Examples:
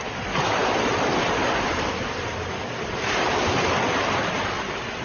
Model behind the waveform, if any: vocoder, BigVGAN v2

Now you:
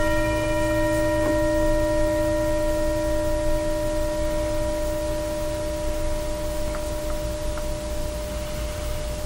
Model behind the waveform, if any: none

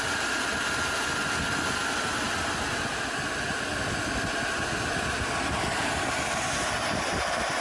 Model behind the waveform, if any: none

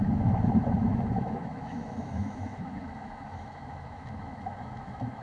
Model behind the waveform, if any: autoencoder, DAC-VAE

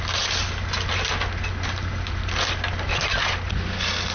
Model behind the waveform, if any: none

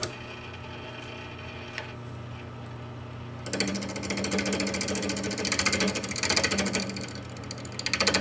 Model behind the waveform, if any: none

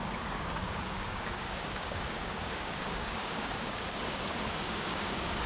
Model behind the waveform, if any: codec, DAC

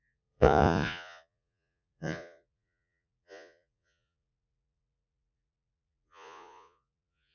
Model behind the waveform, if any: vocoder, Vocos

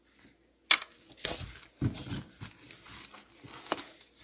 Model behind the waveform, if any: none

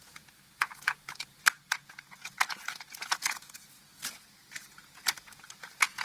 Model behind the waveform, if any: vocoder, Vocos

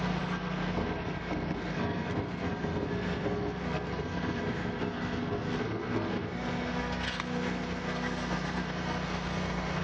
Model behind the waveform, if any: codec, SNAC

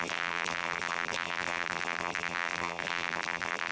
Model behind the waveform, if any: vocoder, BigVGAN v2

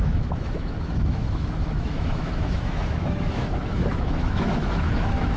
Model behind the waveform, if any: autoencoder, DAC-VAE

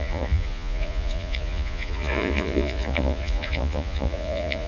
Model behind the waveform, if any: vocoder, Vocos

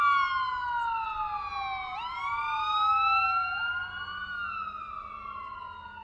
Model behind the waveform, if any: none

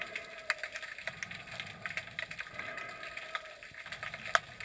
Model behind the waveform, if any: none